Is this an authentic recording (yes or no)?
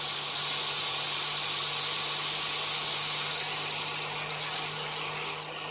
yes